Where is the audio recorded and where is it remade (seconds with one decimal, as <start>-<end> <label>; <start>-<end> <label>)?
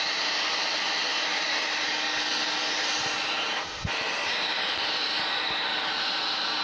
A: 0.0-6.6 recorded